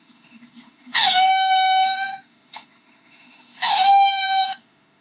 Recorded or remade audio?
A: remade